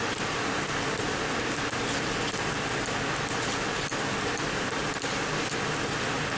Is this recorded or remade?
recorded